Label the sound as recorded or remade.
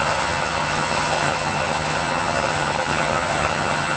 remade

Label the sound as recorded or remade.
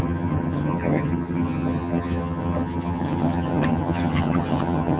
remade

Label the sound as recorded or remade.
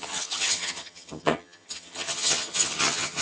remade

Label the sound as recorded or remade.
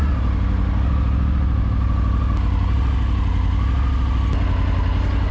recorded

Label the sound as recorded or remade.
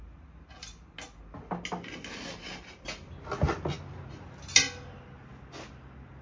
recorded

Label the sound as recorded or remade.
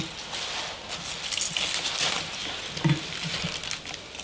recorded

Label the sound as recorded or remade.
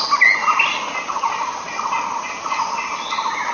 recorded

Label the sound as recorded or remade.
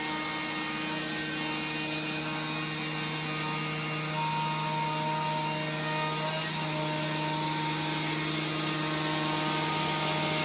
recorded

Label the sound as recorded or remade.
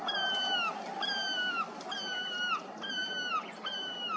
recorded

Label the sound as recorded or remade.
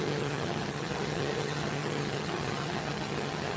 remade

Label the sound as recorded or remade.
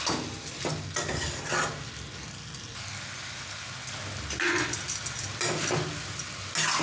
recorded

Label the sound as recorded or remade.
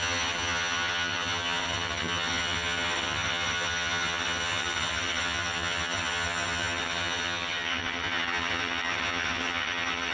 remade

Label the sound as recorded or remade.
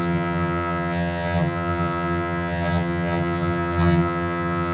remade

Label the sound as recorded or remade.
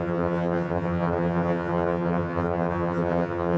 remade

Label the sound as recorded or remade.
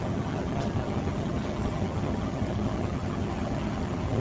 remade